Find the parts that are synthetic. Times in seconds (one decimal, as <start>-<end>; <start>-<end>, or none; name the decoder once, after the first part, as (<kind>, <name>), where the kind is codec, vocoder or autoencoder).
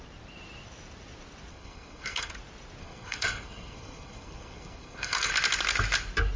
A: 1.5-2.3 (codec, SNAC); 2.8-5.3